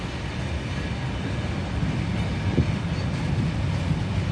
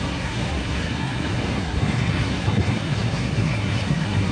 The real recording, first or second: first